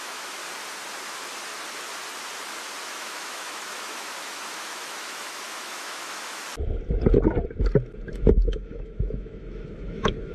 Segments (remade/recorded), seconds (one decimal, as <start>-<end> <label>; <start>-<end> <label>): 0.0-0.4 remade; 0.4-2.8 recorded; 2.8-6.5 remade; 6.5-8.1 recorded; 8.1-10.3 remade

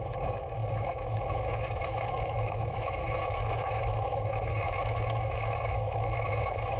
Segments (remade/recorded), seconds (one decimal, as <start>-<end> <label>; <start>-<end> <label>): 0.0-6.8 remade

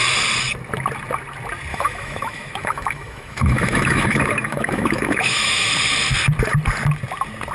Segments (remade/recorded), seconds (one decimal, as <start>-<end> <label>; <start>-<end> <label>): 0.0-1.7 recorded; 1.7-5.7 remade; 5.7-7.5 recorded

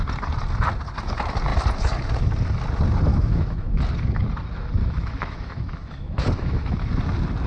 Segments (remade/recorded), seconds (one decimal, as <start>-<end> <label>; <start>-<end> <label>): 0.0-3.1 recorded; 3.1-3.8 remade; 3.8-4.8 recorded; 4.8-6.9 remade; 6.9-7.5 recorded

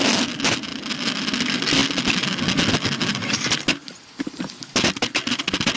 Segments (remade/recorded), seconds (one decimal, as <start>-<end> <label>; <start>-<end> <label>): 0.0-5.8 recorded

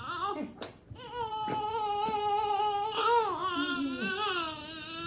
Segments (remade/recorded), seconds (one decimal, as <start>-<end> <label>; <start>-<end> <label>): 0.0-5.1 recorded

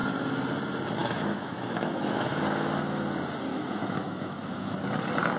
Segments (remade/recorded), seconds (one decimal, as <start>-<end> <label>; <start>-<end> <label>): 0.0-1.0 recorded; 1.0-2.8 remade; 2.8-3.5 recorded; 3.5-4.7 remade; 4.7-5.4 recorded

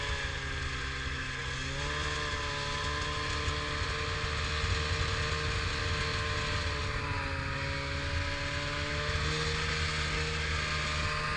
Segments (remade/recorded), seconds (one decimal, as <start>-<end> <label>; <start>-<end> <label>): 0.0-11.4 recorded